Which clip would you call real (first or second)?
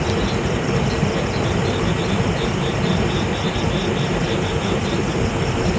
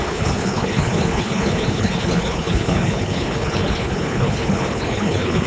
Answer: first